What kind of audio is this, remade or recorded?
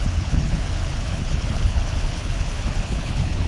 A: remade